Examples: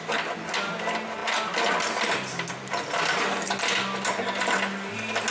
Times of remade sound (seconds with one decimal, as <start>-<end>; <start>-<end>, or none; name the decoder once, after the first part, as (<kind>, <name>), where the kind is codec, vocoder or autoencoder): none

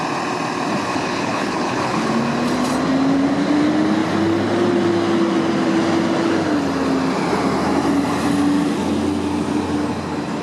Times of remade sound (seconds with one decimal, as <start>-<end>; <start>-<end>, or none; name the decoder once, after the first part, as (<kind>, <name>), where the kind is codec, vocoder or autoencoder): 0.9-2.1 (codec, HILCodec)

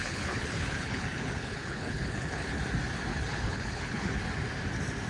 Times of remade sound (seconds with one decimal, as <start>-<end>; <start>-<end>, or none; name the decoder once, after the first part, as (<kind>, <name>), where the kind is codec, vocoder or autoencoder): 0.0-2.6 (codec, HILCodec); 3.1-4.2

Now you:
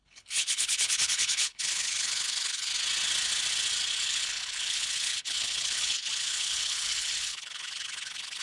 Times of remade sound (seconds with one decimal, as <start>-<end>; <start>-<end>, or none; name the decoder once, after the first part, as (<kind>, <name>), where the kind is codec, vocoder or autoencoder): 0.0-2.7 (codec, HILCodec); 4.0-8.4